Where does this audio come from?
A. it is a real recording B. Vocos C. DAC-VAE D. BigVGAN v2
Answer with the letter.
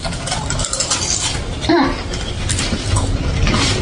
A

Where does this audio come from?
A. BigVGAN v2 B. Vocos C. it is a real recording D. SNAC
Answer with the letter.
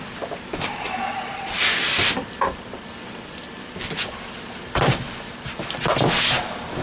C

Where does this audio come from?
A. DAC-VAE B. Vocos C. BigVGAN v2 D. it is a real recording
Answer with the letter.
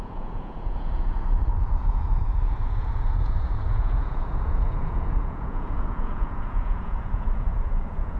B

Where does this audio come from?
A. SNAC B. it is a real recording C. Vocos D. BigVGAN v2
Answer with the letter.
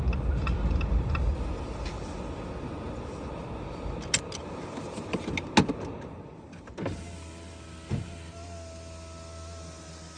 B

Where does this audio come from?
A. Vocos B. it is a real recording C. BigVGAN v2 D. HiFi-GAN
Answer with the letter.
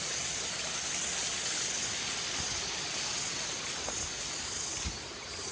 B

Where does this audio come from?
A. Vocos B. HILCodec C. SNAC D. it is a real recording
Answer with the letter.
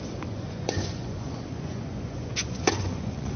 A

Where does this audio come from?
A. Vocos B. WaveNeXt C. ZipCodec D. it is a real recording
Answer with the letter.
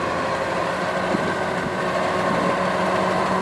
D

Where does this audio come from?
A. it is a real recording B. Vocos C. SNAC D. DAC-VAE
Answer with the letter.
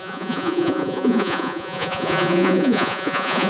B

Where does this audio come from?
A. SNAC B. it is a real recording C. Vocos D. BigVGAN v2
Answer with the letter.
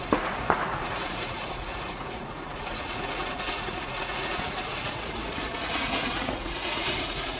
C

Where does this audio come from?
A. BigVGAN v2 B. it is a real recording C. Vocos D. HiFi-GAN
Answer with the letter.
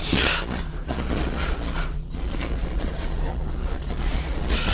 C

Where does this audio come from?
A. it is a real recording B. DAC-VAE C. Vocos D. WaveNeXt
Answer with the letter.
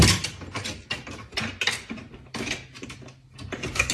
A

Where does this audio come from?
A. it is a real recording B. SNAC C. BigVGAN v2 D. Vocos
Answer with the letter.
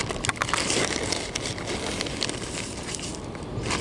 A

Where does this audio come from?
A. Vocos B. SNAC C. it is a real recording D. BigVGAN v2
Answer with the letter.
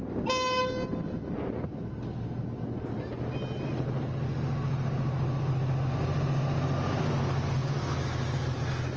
C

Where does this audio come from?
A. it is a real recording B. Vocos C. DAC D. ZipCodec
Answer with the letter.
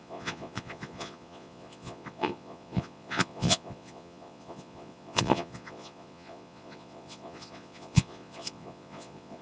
B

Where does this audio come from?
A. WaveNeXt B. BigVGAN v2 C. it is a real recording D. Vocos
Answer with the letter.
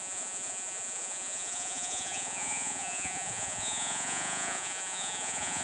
D